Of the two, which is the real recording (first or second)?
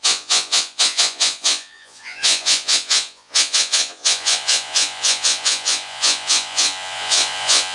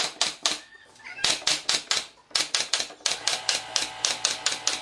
second